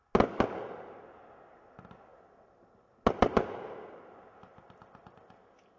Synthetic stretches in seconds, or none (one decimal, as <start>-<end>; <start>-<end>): none